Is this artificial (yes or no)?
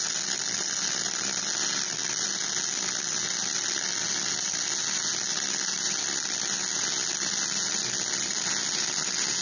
no